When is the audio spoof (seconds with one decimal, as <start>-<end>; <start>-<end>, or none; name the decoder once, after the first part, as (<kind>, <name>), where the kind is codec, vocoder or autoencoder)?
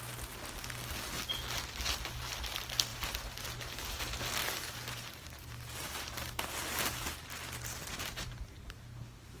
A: 2.9-4.0 (vocoder, BigVGAN v2); 4.4-9.4